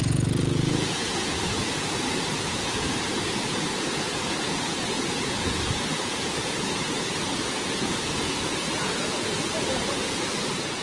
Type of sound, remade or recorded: remade